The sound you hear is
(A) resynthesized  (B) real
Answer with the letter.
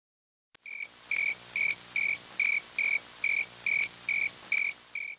B